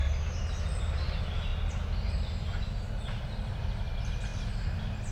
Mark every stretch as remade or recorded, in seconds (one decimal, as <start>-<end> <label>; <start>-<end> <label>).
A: 0.0-5.1 recorded